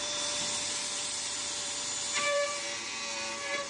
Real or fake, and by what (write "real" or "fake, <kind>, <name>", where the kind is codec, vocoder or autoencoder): fake, vocoder, BigVGAN v2